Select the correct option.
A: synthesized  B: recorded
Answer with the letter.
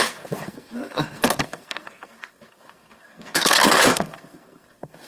A